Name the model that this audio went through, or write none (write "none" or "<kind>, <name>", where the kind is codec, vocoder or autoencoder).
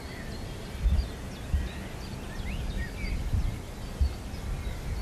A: none